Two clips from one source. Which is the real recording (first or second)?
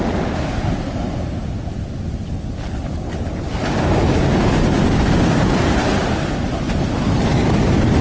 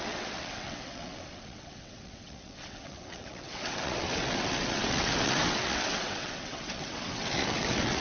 first